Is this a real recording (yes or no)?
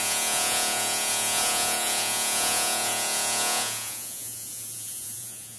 no